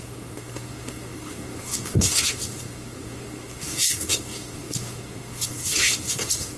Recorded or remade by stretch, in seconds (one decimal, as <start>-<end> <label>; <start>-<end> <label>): 0.0-6.6 remade